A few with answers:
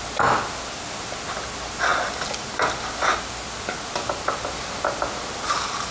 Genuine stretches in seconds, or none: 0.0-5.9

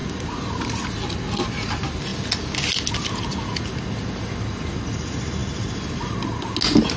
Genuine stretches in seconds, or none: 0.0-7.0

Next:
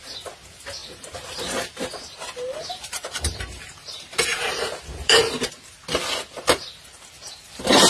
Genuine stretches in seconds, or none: 0.0-0.8; 5.5-7.9